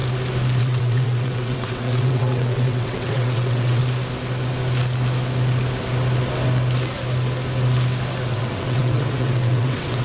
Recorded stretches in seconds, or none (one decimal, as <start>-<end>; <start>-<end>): 0.0-0.6; 3.8-8.3